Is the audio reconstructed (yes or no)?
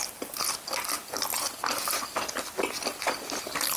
no